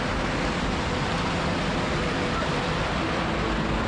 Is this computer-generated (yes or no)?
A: no